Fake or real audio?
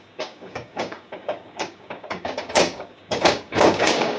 fake